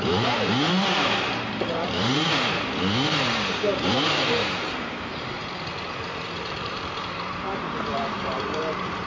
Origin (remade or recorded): remade